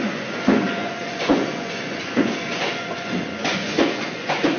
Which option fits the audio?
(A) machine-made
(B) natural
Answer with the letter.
A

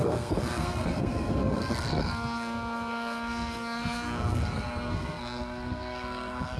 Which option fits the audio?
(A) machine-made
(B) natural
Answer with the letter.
A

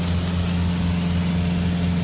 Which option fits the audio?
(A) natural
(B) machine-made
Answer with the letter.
A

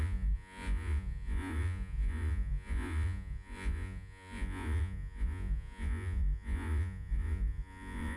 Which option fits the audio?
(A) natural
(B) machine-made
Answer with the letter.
B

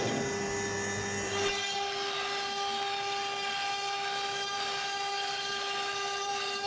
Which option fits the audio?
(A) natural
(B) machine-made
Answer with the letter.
A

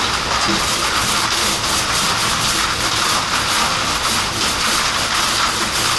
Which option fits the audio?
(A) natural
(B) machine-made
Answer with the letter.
A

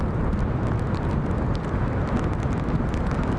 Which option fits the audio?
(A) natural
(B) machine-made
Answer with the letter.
A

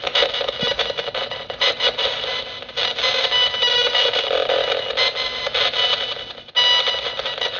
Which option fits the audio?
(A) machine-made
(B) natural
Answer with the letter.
B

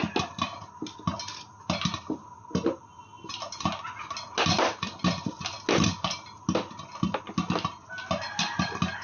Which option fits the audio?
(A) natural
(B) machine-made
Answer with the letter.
A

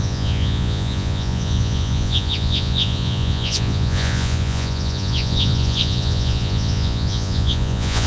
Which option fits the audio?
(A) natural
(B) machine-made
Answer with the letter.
B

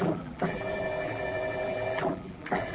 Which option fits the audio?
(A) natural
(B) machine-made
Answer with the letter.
B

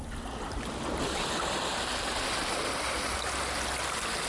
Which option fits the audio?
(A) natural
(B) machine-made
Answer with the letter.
A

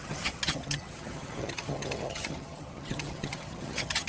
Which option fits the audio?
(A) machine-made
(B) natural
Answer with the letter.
A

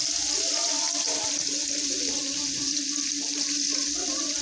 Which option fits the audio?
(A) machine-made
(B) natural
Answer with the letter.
B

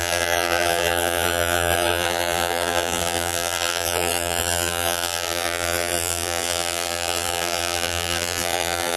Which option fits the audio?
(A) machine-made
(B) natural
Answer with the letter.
A